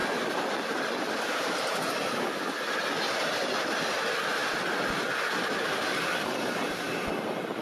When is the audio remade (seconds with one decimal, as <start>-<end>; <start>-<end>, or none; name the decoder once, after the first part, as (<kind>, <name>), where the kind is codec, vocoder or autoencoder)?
none